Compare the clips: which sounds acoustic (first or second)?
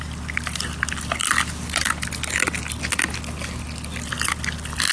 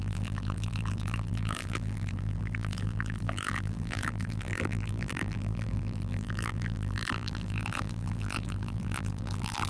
first